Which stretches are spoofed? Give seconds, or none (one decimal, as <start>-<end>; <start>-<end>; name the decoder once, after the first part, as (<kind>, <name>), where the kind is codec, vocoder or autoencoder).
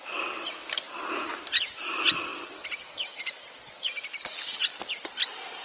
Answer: none